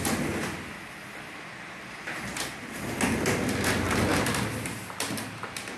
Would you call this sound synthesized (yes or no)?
no